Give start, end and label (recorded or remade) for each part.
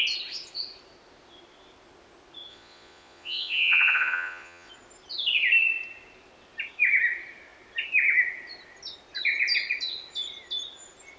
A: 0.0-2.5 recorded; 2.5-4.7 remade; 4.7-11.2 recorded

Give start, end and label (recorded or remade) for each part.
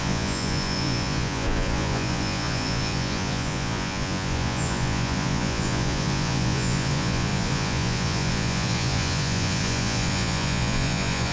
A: 0.0-11.3 remade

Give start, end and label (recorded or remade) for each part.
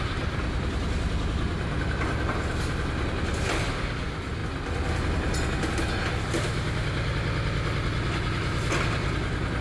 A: 0.0-9.6 recorded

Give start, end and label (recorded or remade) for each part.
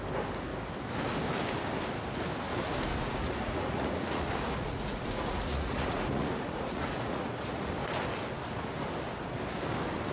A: 0.0-2.9 recorded; 2.9-7.7 remade; 7.7-10.1 recorded